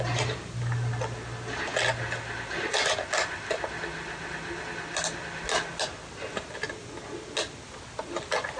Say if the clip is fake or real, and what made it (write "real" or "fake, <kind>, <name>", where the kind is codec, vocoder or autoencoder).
real